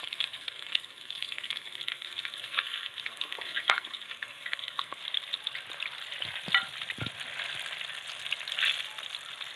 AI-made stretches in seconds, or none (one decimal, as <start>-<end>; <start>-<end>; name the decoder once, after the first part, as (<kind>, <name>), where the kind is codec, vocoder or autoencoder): 0.0-5.0 (codec, SNAC)